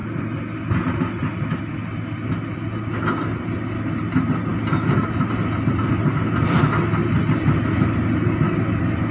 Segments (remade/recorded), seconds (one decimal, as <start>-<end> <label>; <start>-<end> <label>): 0.0-9.1 recorded

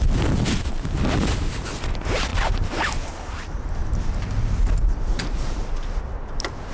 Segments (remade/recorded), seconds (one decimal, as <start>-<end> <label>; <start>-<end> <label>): 0.0-6.7 recorded

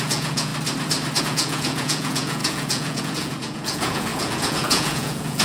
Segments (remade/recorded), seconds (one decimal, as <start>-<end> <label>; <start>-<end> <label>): 0.0-0.5 remade; 0.5-1.2 recorded; 1.2-5.4 remade

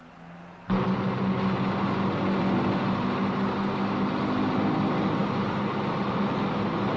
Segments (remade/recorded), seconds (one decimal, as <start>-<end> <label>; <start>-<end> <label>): 0.0-7.0 recorded

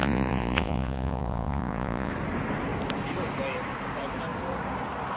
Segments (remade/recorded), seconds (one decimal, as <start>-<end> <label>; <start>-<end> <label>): 0.0-2.1 remade; 2.1-5.2 recorded